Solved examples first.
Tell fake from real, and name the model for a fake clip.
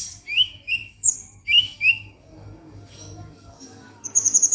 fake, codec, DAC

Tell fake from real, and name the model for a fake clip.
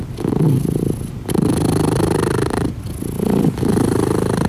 real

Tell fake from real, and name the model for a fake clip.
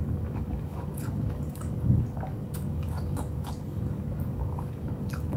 fake, codec, DAC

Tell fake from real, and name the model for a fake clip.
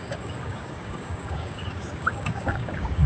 fake, codec, DAC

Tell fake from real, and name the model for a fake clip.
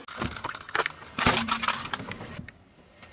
real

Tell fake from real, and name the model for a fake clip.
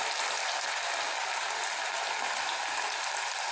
real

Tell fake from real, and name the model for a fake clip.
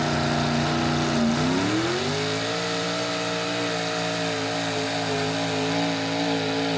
real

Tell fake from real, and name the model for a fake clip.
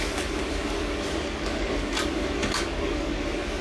fake, codec, DAC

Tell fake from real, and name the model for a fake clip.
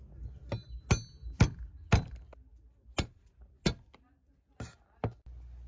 real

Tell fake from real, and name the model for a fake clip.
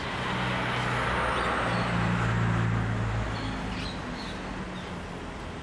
real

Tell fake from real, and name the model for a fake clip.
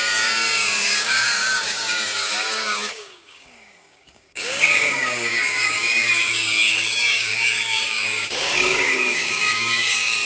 fake, codec, DAC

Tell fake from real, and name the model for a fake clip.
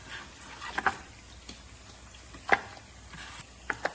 real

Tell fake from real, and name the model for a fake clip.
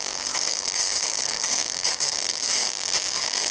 fake, codec, DAC